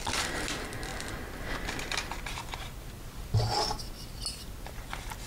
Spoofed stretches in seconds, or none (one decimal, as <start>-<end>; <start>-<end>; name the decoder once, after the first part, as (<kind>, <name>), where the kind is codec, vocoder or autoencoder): none